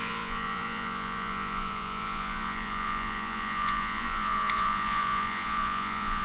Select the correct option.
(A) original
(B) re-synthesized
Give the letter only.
B